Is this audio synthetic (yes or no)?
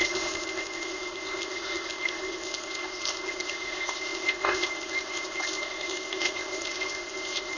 yes